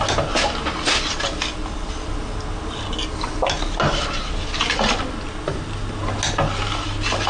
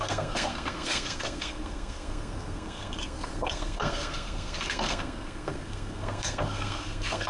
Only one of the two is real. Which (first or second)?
first